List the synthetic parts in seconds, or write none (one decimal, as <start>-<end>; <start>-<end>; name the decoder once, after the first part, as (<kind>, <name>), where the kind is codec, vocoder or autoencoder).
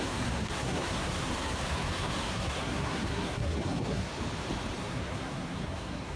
0.0-4.1 (codec, SNAC); 4.8-6.2